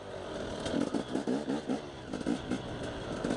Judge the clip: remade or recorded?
recorded